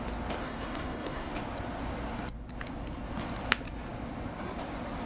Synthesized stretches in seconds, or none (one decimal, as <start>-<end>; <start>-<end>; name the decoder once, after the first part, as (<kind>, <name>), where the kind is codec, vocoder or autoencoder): 0.4-1.3 (codec, SNAC)